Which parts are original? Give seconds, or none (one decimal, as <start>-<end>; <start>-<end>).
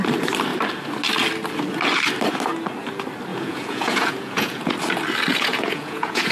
0.0-3.3; 4.7-5.3